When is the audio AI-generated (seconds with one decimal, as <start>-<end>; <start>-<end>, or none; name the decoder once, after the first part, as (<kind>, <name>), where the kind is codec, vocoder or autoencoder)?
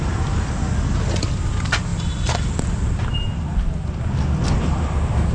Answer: none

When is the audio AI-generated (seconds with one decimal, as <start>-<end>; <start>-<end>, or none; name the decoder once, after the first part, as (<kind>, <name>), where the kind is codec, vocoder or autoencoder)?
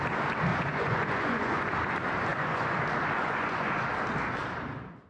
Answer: 0.5-1.7 (vocoder, Vocos); 2.3-2.8; 3.2-3.8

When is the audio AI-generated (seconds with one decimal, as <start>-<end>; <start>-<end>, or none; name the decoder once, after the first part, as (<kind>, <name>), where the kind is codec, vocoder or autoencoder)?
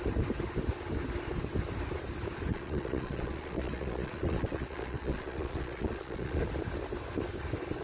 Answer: 2.5-6.4 (vocoder, Vocos)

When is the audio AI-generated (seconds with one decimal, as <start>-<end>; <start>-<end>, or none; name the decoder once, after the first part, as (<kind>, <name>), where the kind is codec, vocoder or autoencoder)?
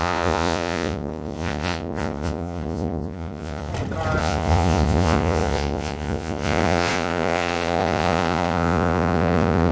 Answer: 0.0-3.7 (vocoder, Vocos); 4.2-9.7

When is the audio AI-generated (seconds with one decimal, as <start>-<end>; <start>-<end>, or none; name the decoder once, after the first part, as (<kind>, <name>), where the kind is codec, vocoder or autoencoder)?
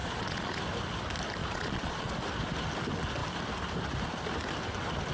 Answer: 0.0-0.6 (vocoder, Vocos); 1.4-2.1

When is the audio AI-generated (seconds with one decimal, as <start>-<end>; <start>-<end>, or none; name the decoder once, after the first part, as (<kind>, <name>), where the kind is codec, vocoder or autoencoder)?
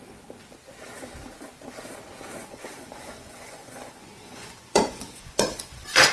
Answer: 2.4-6.1 (vocoder, Vocos)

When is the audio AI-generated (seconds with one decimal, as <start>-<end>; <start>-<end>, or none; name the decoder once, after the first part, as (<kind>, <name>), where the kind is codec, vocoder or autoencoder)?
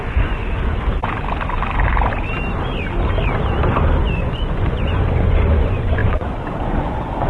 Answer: 0.0-0.4 (vocoder, Vocos); 4.0-7.3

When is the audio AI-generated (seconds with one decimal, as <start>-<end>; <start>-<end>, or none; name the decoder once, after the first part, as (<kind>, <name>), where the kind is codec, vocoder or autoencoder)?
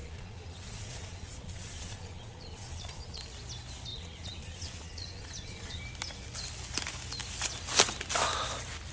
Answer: 0.0-3.2 (vocoder, Vocos); 3.9-5.8